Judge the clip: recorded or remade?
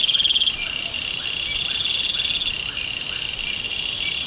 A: recorded